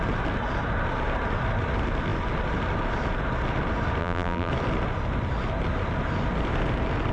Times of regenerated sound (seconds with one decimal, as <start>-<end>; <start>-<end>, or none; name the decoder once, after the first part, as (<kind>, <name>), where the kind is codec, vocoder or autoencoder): 4.0-4.5 (vocoder, BigVGAN v2)